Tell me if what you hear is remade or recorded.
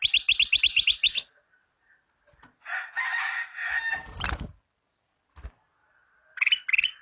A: recorded